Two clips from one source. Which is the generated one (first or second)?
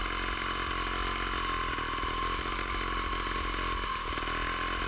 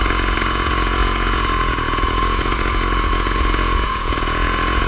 second